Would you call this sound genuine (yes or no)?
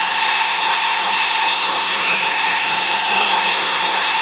no